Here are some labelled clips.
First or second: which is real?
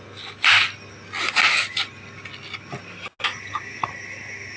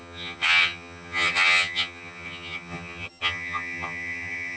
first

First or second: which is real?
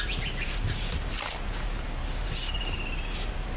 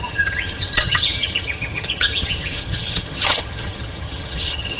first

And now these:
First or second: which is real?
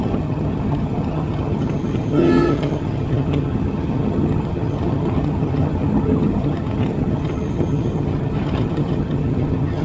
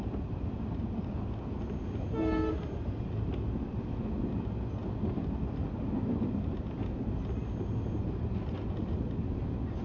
second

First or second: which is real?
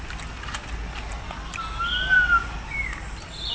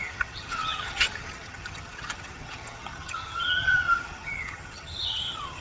first